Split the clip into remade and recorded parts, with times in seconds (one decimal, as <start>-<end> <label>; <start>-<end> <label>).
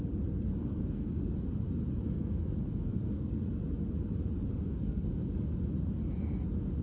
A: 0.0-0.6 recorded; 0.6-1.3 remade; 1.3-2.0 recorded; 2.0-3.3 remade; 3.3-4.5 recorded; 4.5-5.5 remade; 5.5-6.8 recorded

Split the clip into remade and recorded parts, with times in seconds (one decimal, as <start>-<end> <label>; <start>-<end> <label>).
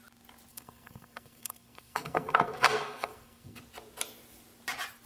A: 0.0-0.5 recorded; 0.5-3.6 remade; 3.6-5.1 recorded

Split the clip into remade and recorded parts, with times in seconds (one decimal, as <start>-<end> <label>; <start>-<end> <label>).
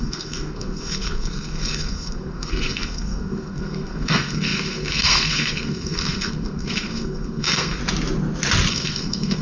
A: 0.0-7.8 remade; 7.8-8.7 recorded; 8.7-9.4 remade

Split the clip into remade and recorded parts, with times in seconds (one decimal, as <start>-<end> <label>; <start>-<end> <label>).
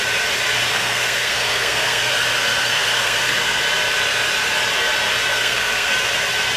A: 0.0-0.7 recorded; 0.7-2.1 remade; 2.1-2.6 recorded; 2.6-3.6 remade; 3.6-5.3 recorded; 5.3-5.9 remade; 5.9-6.6 recorded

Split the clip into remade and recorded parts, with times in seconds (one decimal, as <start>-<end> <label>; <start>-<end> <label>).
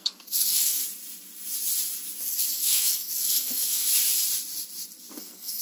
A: 0.0-0.8 remade; 0.8-2.2 recorded; 2.2-3.9 remade; 3.9-5.1 recorded; 5.1-5.6 remade